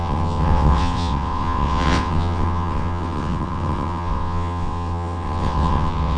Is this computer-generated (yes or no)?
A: yes